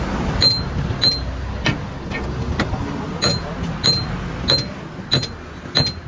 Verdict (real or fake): real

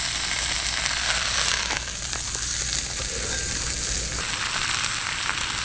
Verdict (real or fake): real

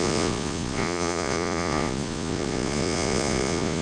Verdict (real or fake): fake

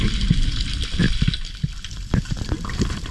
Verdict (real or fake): real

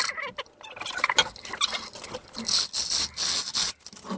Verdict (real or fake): real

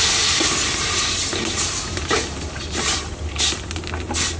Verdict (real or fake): real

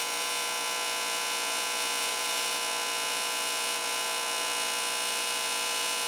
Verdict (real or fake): fake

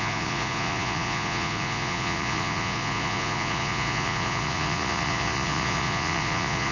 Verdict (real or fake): fake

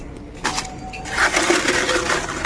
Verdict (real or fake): real